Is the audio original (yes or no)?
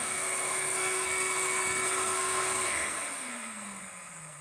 no